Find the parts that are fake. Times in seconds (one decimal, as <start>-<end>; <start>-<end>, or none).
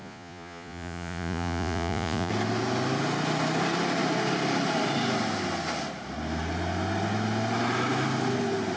0.0-2.3